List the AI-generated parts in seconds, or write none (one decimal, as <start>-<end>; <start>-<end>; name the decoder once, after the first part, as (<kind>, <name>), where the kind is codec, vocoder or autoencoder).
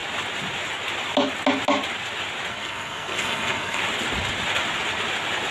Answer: 2.5-3.8 (codec, SNAC)